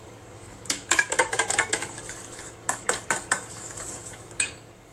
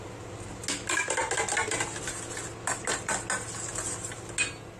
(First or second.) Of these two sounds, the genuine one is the second